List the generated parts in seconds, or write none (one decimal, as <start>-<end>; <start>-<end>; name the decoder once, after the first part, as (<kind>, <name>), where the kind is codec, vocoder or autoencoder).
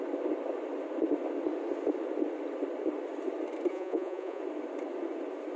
3.7-4.4 (vocoder, Vocos)